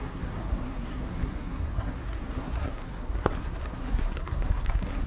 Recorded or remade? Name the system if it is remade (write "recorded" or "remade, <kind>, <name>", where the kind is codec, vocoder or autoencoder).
remade, codec, SNAC